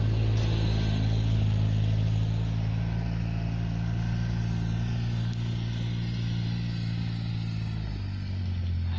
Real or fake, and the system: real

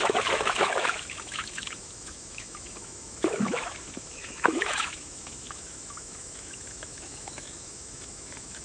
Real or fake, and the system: fake, autoencoder, DAC-VAE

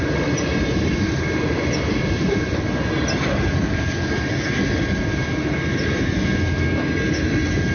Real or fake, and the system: real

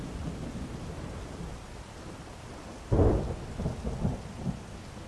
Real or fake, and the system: real